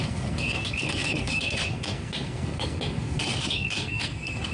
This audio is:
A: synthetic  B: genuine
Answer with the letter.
A